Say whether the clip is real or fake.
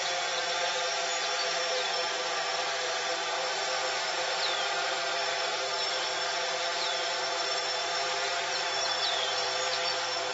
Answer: fake